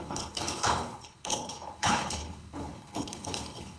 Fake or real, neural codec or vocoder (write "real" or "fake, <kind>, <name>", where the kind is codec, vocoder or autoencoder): fake, codec, HILCodec